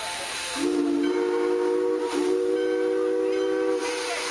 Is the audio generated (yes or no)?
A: no